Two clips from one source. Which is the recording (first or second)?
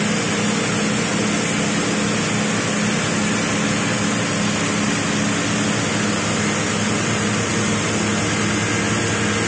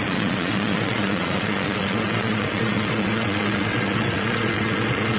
first